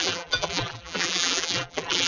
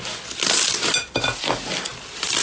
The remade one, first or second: first